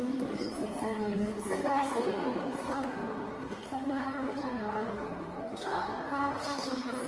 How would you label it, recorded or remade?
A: remade